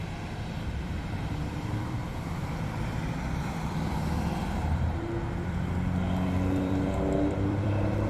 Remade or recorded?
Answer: remade